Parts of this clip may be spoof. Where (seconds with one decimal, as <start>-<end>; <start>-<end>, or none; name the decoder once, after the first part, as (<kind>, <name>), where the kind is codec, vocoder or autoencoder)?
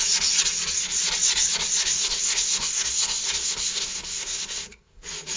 1.8-5.0 (codec, SNAC)